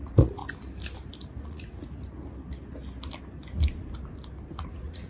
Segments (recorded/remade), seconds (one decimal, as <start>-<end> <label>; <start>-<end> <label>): 0.0-0.4 remade; 0.4-1.4 recorded; 1.4-1.8 remade; 1.8-4.6 recorded; 4.6-5.1 remade